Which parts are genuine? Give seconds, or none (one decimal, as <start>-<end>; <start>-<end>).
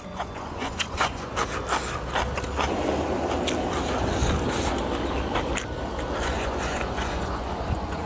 1.3-6.2